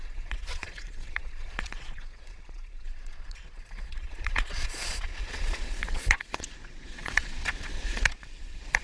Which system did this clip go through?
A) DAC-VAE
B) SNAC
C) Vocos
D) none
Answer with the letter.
C